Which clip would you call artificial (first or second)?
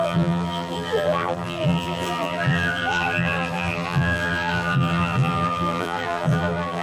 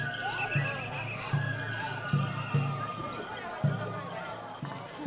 first